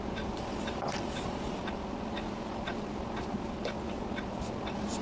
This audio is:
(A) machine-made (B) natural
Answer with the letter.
B